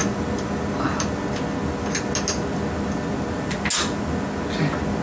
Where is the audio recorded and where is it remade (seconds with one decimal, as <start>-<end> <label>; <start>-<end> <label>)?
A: 0.0-5.0 recorded